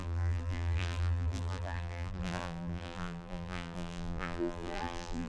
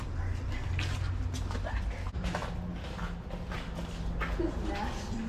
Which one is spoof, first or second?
first